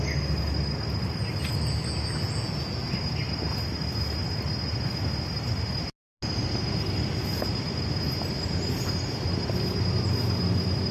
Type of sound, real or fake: real